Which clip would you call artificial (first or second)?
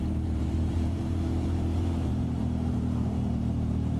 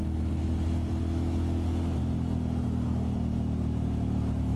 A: first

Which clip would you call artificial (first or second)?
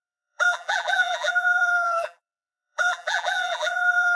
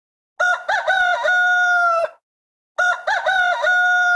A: first